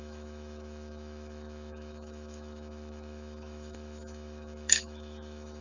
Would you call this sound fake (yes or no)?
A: yes